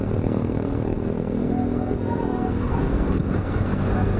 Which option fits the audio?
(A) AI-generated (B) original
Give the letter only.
A